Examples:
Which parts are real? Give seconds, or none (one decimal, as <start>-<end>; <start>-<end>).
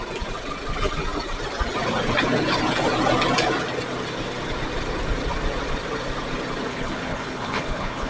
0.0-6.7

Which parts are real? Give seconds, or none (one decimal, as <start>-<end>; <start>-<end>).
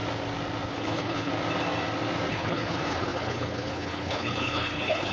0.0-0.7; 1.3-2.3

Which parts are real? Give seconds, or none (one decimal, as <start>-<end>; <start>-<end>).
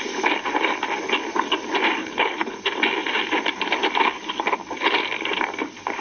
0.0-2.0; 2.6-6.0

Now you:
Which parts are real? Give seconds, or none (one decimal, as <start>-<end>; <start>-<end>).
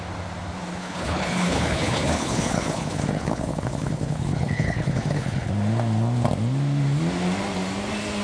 0.0-0.7; 5.5-8.2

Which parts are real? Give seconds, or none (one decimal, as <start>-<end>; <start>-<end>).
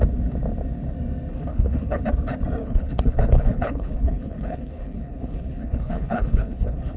0.0-1.3; 2.0-2.6